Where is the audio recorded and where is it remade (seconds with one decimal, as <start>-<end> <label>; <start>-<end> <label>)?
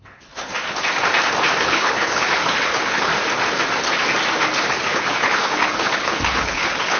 0.0-0.5 remade; 0.5-1.6 recorded; 1.6-3.1 remade; 3.1-4.7 recorded; 4.7-7.0 remade